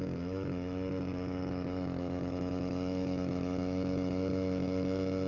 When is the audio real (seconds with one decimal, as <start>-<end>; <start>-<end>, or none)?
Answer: none